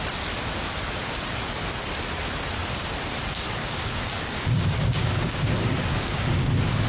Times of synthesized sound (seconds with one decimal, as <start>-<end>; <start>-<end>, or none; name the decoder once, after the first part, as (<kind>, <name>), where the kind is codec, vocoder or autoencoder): 3.6-5.5 (codec, DAC); 5.9-6.5